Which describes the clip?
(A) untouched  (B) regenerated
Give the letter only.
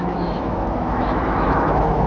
B